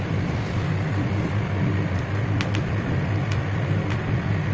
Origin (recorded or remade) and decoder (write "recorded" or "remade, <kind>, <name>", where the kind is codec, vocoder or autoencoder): recorded